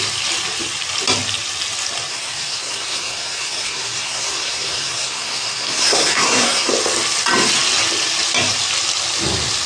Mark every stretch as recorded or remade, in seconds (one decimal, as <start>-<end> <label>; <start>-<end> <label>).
0.0-2.1 recorded; 2.1-6.7 remade; 6.7-9.7 recorded

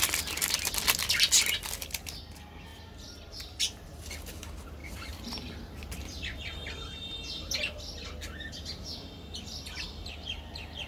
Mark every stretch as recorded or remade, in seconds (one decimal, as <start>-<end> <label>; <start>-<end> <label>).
0.0-2.7 recorded; 2.7-3.9 remade; 3.9-4.8 recorded; 4.8-7.6 remade; 7.6-10.9 recorded

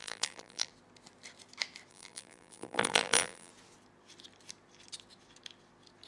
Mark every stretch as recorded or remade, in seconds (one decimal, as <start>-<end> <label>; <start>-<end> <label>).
0.0-0.7 remade; 0.7-1.9 recorded; 1.9-3.5 remade; 3.5-6.1 recorded

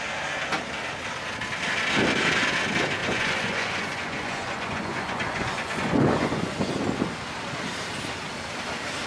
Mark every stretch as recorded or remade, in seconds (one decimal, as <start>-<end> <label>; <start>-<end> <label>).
0.0-3.0 recorded; 3.0-6.7 remade; 6.7-9.1 recorded